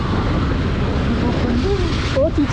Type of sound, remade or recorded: recorded